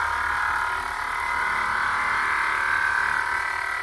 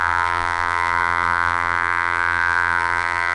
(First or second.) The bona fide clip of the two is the first